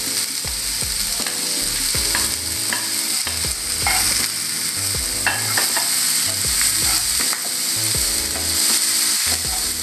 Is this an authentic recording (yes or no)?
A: yes